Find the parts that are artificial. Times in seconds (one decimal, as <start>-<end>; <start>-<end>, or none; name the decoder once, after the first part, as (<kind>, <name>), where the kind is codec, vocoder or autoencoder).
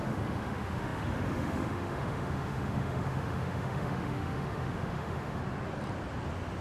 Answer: 0.0-5.4 (autoencoder, DAC-VAE)